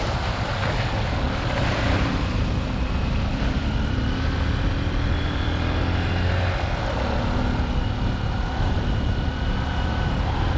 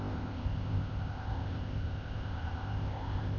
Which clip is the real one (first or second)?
first